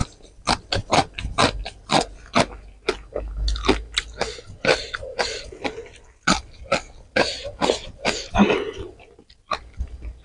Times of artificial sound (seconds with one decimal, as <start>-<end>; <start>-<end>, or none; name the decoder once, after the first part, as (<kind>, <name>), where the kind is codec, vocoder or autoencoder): none